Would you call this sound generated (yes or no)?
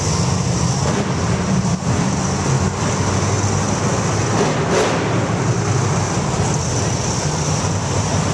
no